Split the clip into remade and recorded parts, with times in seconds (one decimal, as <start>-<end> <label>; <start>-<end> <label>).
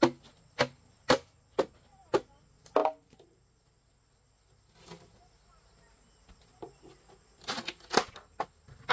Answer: 0.0-8.9 recorded